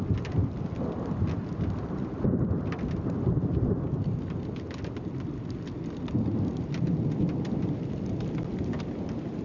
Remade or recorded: remade